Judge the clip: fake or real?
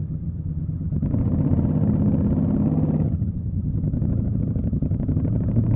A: fake